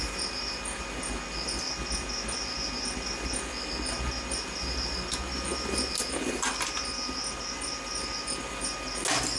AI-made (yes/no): no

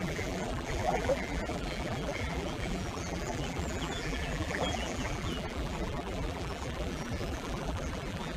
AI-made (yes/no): yes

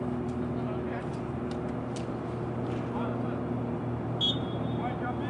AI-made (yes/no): no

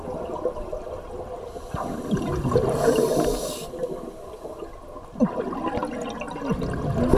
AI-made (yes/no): no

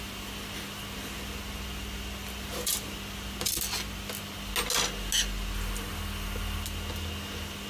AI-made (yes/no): no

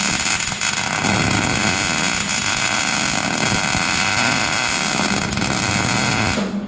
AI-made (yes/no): no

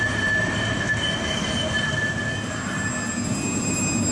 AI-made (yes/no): no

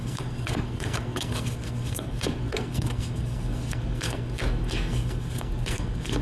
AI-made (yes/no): yes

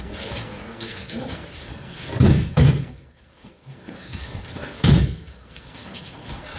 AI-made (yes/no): yes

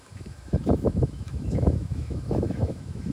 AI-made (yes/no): yes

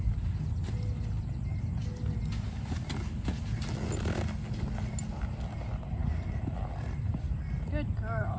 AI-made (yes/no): no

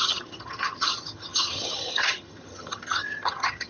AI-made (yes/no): yes